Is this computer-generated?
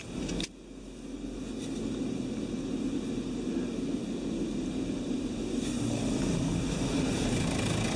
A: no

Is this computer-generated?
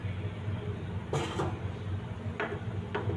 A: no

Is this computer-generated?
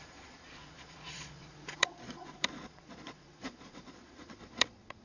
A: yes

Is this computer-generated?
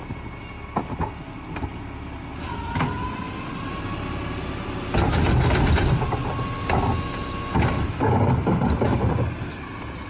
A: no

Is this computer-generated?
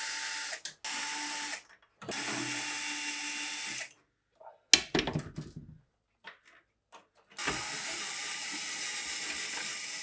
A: no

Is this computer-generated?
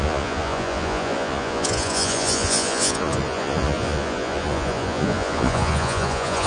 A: yes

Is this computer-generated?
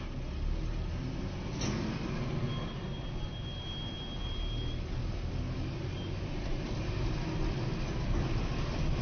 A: no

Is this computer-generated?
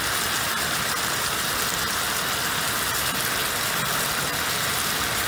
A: no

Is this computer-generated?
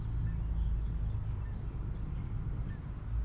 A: no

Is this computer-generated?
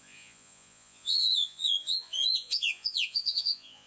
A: yes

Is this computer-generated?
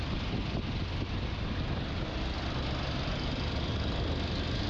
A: no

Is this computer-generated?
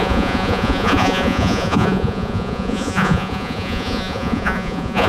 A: yes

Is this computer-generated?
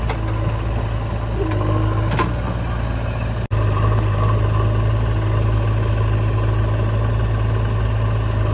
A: no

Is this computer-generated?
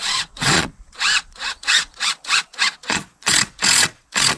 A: yes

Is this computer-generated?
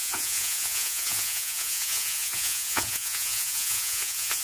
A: yes